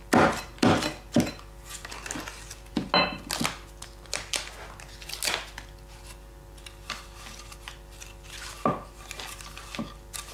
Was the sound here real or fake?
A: real